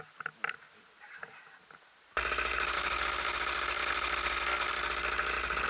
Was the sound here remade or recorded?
recorded